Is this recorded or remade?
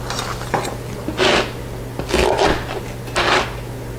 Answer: recorded